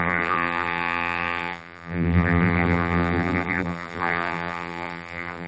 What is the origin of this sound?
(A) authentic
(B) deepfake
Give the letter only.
B